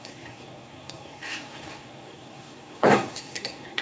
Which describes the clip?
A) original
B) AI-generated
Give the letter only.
B